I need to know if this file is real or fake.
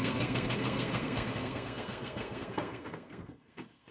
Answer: fake